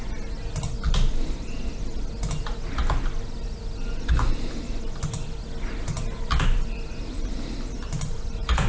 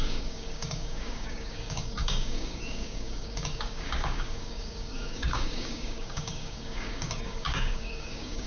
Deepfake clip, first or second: second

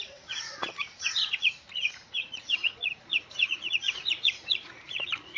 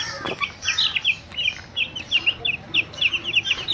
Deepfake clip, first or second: first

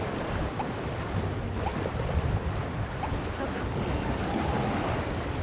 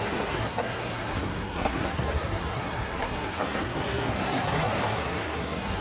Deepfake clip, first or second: second